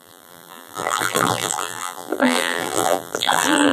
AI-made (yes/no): yes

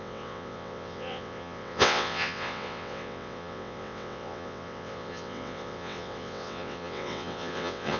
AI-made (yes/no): yes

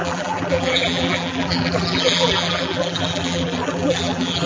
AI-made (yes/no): yes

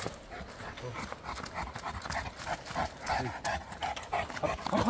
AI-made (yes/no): no